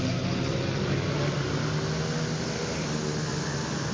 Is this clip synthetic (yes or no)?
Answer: no